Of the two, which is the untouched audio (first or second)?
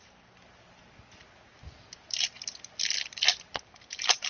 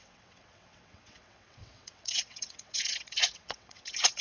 first